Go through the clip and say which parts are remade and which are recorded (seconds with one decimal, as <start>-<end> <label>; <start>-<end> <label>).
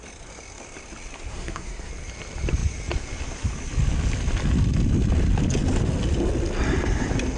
0.0-1.3 recorded; 1.3-1.9 remade; 1.9-7.4 recorded